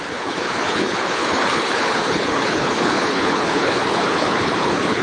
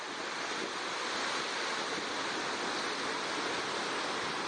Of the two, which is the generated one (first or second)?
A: first